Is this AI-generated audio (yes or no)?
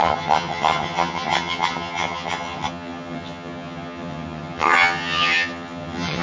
yes